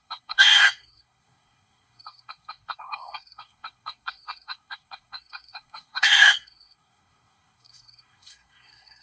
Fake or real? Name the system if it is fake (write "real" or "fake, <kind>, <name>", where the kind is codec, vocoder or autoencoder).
fake, codec, SNAC